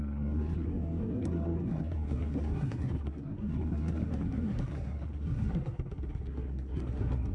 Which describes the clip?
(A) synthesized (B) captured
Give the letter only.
A